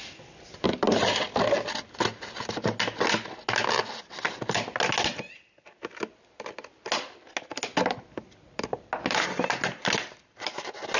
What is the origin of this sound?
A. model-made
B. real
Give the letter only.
B